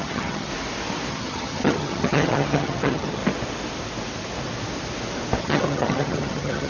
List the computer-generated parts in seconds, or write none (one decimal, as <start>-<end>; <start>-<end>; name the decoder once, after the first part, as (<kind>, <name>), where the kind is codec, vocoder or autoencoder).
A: 0.0-0.5 (vocoder, HiFi-GAN); 1.1-3.2; 5.4-6.7

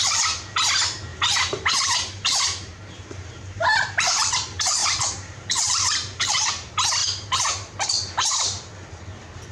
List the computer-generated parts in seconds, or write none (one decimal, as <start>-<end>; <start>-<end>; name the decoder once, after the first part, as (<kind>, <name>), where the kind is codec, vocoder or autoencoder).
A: 1.1-4.3 (vocoder, BigVGAN v2); 4.8-6.5; 7.0-7.5; 8.0-8.7

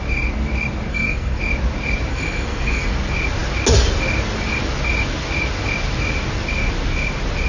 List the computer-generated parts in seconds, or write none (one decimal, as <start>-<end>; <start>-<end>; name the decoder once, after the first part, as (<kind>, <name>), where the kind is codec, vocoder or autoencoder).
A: 0.9-1.4 (codec, SNAC); 2.1-2.9

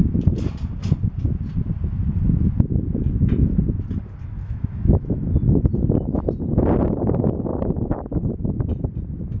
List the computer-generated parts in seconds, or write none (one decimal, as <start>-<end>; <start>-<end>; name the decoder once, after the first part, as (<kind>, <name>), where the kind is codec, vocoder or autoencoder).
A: 4.4-5.3 (autoencoder, DAC-VAE); 7.5-8.0

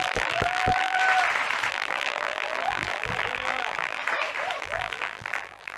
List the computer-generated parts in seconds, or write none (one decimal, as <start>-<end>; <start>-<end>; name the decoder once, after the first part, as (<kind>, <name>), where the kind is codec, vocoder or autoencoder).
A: 0.0-1.0 (vocoder, BigVGAN v2); 1.7-4.0; 4.6-5.8

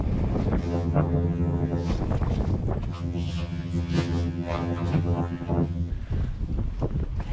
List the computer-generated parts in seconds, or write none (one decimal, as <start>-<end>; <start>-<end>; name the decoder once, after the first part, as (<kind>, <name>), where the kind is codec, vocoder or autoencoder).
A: 0.6-1.9 (vocoder, HiFi-GAN); 2.9-5.9